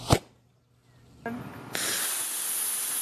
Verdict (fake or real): real